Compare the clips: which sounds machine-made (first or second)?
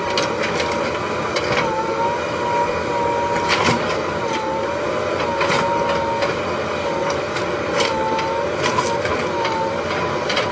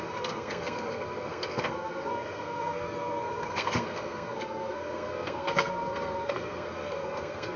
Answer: second